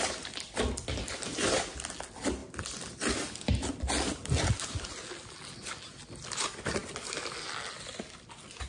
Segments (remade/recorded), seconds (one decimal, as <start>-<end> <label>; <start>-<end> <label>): 0.0-8.7 recorded